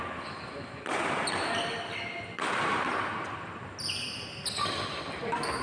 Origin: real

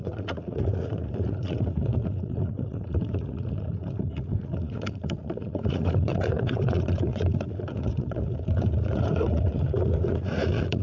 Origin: fake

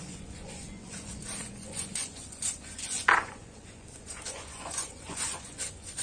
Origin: fake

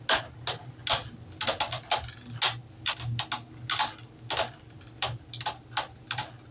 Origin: real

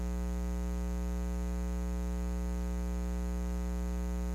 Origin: real